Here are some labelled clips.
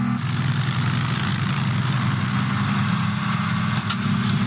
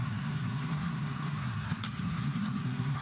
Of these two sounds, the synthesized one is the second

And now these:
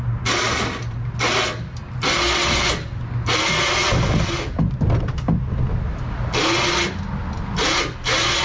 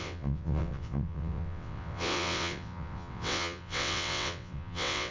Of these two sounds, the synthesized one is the second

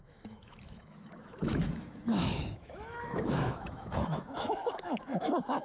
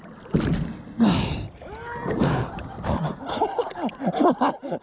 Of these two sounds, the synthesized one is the first